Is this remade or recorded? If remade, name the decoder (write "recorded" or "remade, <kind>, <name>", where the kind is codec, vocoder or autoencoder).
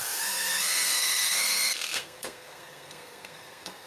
remade, codec, SNAC